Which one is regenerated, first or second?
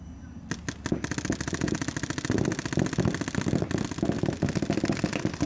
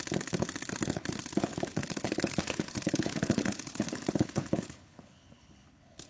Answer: second